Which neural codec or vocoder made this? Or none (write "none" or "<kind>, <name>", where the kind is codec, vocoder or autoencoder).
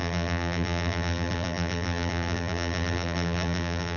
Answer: vocoder, BigVGAN v2